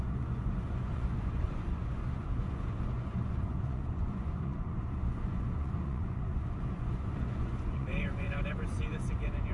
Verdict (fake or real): fake